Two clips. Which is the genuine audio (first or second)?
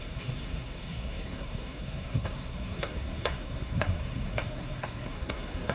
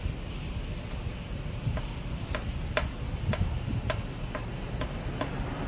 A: second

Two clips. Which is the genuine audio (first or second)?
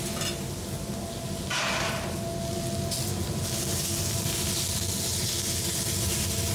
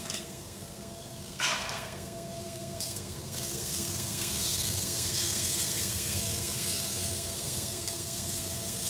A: first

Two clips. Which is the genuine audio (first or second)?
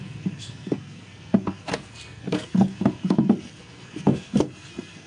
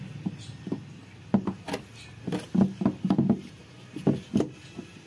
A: second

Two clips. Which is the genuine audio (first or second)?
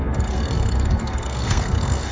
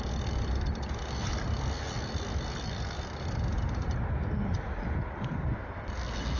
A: second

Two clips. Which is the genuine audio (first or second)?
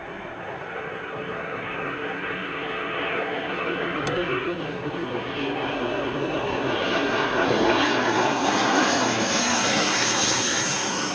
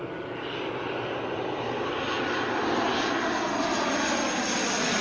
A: second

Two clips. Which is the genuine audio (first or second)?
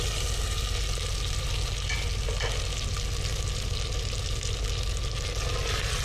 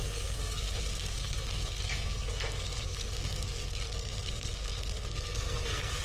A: first